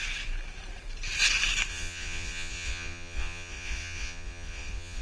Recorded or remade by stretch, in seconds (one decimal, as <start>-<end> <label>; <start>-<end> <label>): 0.0-1.7 recorded; 1.7-5.0 remade